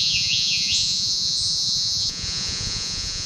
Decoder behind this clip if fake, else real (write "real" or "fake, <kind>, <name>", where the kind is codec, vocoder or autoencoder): fake, vocoder, Vocos